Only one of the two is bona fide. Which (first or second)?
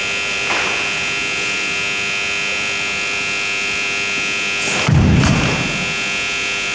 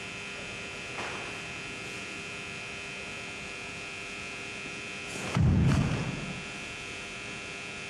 first